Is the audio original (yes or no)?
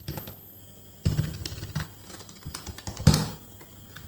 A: yes